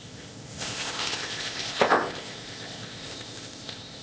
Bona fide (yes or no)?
no